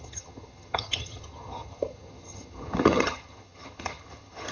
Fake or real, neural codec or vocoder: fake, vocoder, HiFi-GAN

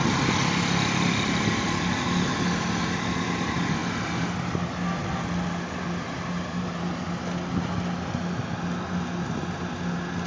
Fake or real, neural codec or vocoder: real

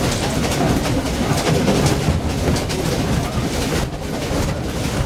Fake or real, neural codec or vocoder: real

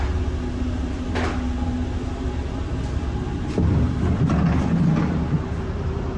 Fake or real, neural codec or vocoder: real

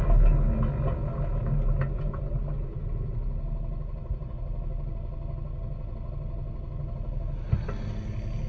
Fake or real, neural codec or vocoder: real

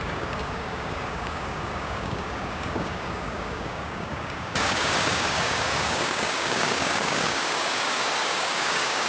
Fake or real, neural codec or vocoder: fake, codec, DAC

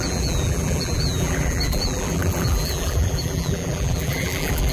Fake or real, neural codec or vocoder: fake, vocoder, BigVGAN v2